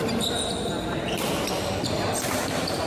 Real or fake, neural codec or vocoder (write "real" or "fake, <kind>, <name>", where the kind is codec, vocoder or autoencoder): real